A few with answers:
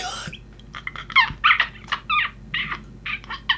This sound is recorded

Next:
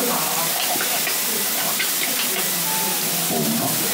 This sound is recorded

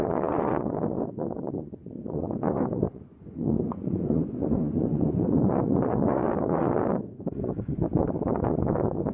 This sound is remade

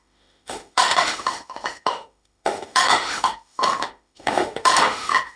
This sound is remade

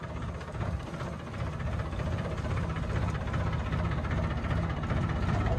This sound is remade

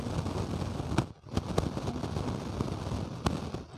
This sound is recorded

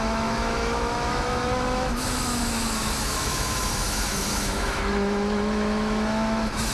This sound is remade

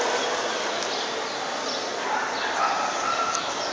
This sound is recorded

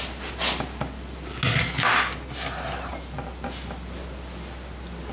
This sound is recorded